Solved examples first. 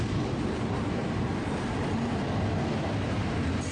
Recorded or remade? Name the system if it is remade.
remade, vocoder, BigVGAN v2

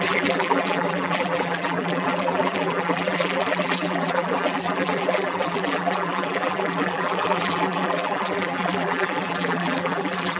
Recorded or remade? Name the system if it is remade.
remade, vocoder, BigVGAN v2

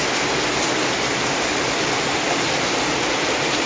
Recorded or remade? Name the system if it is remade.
recorded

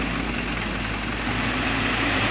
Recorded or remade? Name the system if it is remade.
recorded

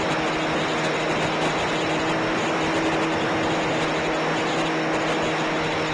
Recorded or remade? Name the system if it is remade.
recorded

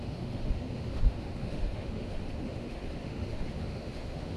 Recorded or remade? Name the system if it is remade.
remade, autoencoder, DAC-VAE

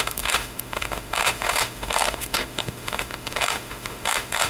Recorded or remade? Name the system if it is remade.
remade, autoencoder, DAC-VAE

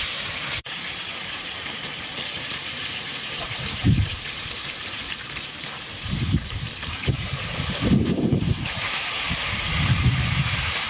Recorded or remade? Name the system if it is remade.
remade, vocoder, BigVGAN v2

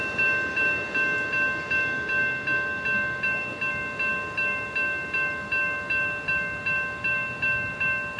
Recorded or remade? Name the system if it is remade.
recorded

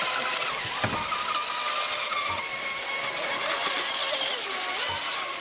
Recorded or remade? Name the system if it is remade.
recorded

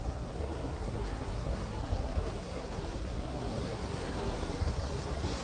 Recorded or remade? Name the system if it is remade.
remade, codec, SNAC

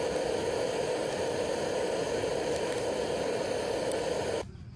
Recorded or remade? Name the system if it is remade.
recorded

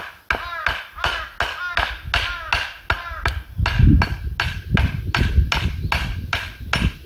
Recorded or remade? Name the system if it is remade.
recorded